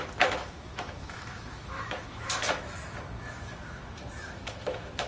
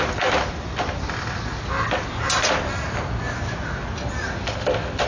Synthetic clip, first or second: first